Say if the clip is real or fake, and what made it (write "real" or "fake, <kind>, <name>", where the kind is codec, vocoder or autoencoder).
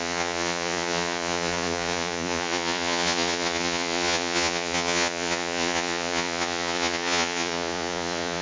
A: fake, vocoder, Vocos